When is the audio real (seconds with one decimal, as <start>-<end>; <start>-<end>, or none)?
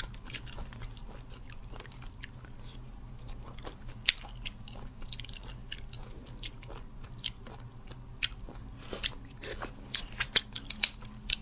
0.0-11.4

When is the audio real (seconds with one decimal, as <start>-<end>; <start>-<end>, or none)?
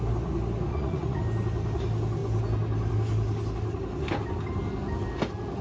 0.0-0.7; 1.2-5.6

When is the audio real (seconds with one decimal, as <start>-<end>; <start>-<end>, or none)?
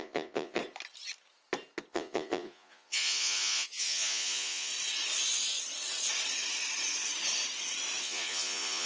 0.6-1.9; 4.7-8.0